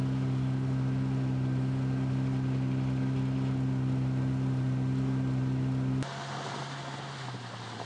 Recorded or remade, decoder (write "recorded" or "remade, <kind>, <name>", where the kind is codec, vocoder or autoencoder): recorded